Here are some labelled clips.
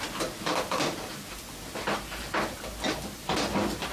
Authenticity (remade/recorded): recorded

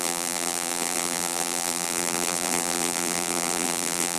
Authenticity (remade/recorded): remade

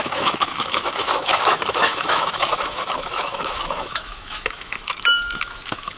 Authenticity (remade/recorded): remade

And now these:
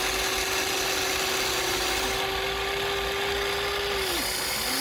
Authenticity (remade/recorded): recorded